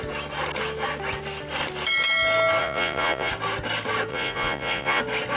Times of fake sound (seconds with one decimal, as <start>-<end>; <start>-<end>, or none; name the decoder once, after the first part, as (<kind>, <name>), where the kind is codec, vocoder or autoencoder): 2.6-3.3 (vocoder, Vocos); 4.1-5.0